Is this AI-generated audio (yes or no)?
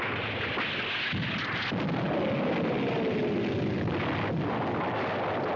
no